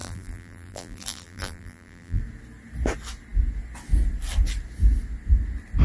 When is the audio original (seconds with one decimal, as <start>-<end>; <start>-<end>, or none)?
2.2-5.8